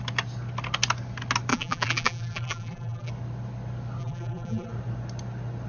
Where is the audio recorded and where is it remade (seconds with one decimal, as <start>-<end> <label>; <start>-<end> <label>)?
0.0-1.5 recorded; 1.5-3.1 remade; 3.1-4.0 recorded; 4.0-4.7 remade; 4.7-5.7 recorded